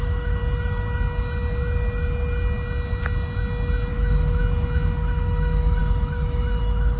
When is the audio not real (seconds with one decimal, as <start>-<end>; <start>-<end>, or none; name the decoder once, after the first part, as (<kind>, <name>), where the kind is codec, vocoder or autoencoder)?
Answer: 0.0-0.4 (autoencoder, DAC-VAE); 3.9-4.4; 5.0-7.0